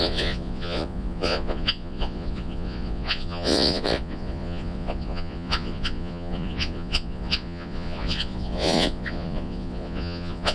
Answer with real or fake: fake